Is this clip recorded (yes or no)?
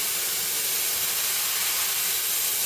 yes